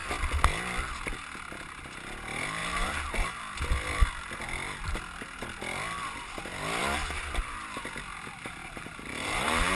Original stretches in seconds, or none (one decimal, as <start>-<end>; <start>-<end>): 0.0-2.6; 3.4-8.6